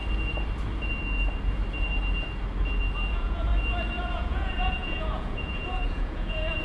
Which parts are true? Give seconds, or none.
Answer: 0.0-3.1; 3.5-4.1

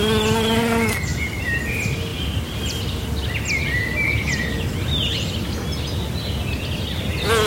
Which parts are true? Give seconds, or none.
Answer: 0.0-7.5

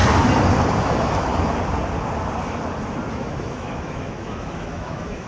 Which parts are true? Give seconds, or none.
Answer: 0.0-0.8; 1.3-3.1

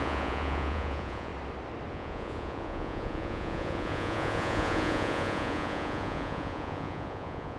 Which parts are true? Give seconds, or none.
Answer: 1.3-1.9

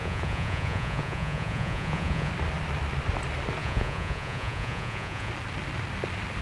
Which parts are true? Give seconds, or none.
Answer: 2.3-3.6; 5.3-6.4